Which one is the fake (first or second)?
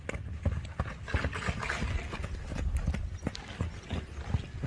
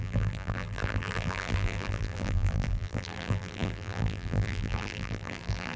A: second